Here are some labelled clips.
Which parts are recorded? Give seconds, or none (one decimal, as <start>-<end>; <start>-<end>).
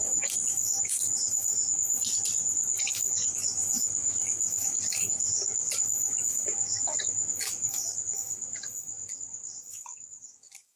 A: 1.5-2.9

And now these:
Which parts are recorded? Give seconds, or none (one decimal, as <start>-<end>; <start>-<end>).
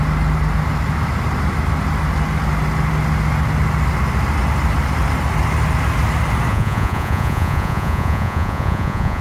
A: 0.0-6.5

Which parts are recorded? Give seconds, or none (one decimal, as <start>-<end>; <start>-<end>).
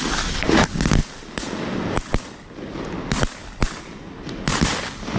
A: 0.0-5.2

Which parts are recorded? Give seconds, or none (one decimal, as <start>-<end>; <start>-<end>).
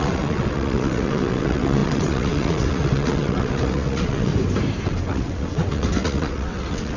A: 4.3-4.8